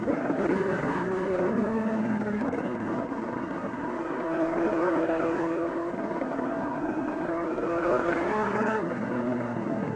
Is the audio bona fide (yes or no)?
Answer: no